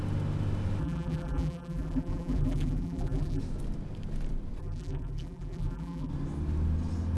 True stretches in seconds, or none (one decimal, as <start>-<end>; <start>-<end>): 0.0-0.8; 3.4-4.6; 6.1-7.2